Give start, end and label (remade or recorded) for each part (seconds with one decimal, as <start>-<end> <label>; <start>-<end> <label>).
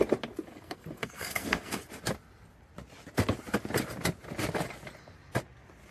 0.0-0.5 recorded; 0.5-1.8 remade; 1.8-5.9 recorded